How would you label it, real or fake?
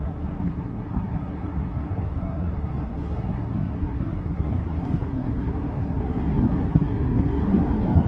fake